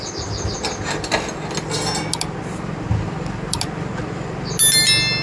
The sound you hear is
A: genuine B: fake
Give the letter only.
A